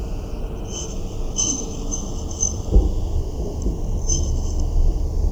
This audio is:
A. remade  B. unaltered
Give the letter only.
B